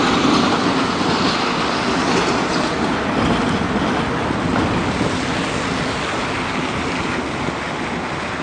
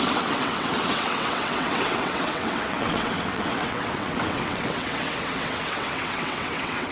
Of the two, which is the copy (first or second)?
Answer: second